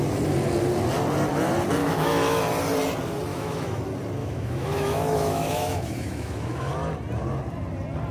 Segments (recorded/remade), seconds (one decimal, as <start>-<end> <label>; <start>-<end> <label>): 0.0-1.8 recorded; 1.8-2.4 remade; 2.4-3.3 recorded; 3.3-3.8 remade; 3.8-4.2 recorded; 4.2-6.7 remade; 6.7-8.1 recorded